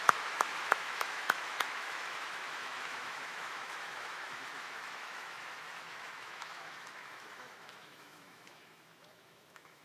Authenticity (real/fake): fake